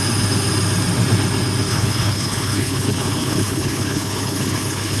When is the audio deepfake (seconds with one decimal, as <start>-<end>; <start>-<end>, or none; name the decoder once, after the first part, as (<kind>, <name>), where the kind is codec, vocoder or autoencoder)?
1.7-5.0 (codec, HILCodec)